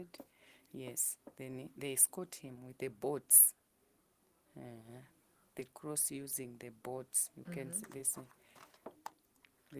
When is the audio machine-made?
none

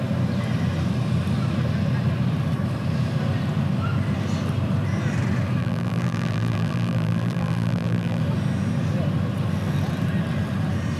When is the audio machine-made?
5.6-8.2

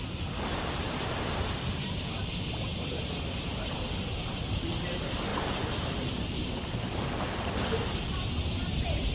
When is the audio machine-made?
0.0-2.7; 4.2-9.1

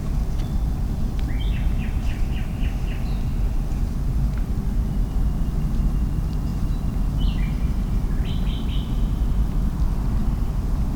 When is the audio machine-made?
none

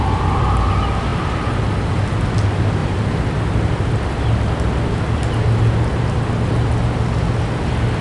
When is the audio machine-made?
none

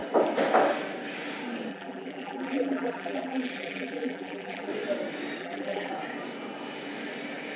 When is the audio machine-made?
1.7-4.7; 5.4-5.9